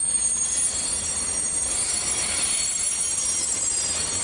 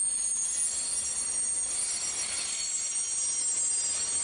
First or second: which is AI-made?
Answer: first